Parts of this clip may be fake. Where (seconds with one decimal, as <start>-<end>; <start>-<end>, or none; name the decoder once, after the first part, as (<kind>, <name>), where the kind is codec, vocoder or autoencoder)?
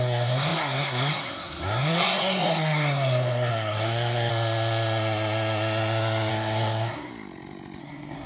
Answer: 0.0-4.3 (codec, SNAC); 6.3-7.1; 7.8-8.3